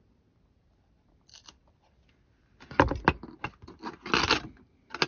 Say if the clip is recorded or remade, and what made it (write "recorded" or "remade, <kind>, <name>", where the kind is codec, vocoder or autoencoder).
recorded